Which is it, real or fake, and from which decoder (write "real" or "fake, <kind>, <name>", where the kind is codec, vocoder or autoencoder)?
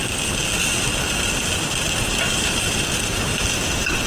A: real